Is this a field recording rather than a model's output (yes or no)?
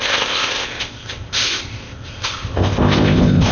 no